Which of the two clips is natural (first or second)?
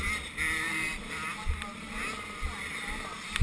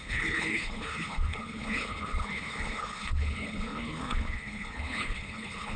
first